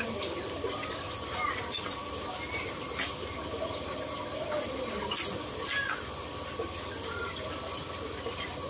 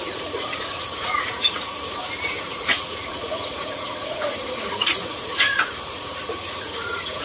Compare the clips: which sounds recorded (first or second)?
first